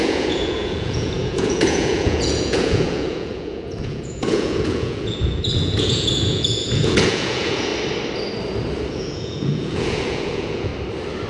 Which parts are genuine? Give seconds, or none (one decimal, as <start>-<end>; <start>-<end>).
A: 7.7-8.9; 10.7-11.3